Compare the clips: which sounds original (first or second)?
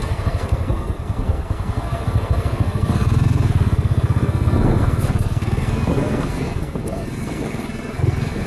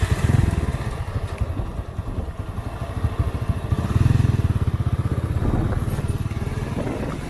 second